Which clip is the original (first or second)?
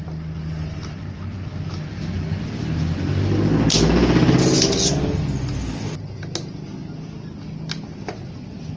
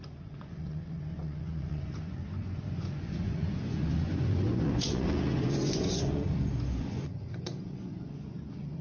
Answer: first